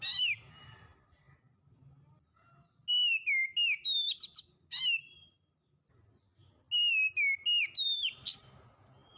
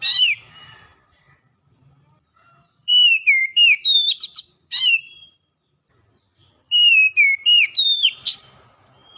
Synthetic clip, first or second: second